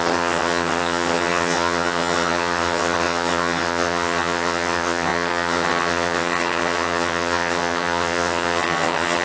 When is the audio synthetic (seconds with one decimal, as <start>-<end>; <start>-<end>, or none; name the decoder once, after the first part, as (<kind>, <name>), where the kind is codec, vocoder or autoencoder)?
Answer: 0.0-9.2 (vocoder, HiFi-GAN)